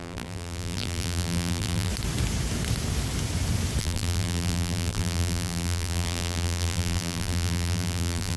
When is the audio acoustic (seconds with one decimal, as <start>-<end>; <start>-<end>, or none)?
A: 1.9-3.8